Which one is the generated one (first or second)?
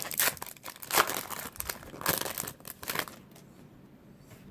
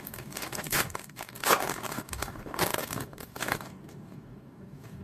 second